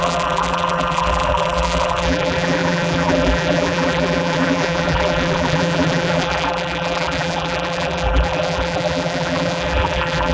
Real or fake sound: fake